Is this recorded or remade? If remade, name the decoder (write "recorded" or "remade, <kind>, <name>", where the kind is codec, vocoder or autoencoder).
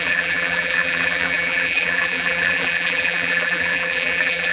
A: remade, vocoder, BigVGAN v2